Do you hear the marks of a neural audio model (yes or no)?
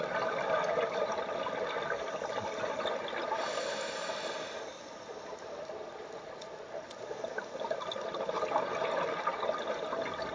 no